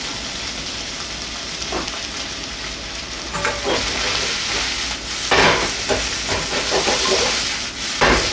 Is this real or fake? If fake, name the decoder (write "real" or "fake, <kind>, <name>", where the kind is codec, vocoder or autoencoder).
real